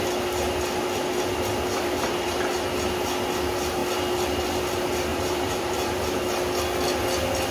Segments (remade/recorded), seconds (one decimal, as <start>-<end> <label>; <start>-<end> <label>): 0.0-1.7 recorded; 1.7-2.4 remade; 2.4-5.1 recorded; 5.1-6.2 remade; 6.2-7.5 recorded